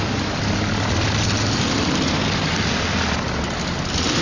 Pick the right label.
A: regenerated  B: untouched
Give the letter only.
B